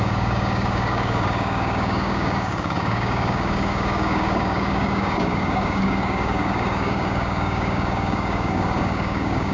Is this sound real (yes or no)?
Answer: no